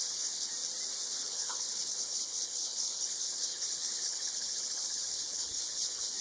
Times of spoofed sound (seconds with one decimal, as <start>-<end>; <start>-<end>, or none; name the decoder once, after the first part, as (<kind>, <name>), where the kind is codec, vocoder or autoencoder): 0.0-0.5 (codec, HILCodec); 1.0-6.2